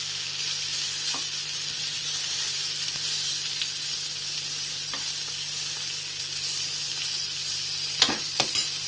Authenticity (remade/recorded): recorded